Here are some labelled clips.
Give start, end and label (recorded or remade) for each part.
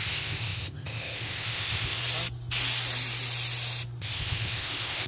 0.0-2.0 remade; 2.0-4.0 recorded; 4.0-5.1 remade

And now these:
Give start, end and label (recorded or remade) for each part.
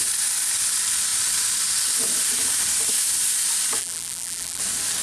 0.0-3.8 recorded; 3.8-4.6 remade; 4.6-5.0 recorded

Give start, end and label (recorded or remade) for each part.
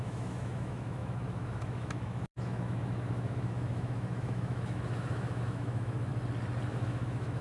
0.0-6.1 remade; 6.1-6.7 recorded; 6.7-7.4 remade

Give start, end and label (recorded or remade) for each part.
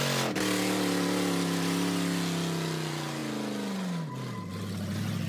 0.0-5.3 recorded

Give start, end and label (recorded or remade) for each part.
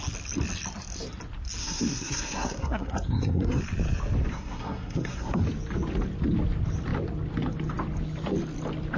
0.0-1.6 recorded; 1.6-3.6 remade; 3.6-4.3 recorded; 4.3-5.4 remade; 5.4-9.0 recorded